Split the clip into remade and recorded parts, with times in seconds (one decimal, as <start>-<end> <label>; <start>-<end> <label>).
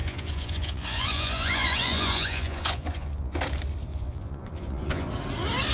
0.0-3.4 remade; 3.4-3.9 recorded; 3.9-5.1 remade; 5.1-5.7 recorded